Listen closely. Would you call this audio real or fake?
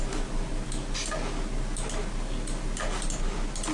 real